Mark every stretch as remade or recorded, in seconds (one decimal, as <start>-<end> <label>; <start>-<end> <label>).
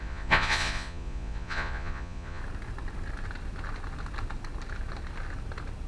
0.0-2.4 remade; 2.4-5.9 recorded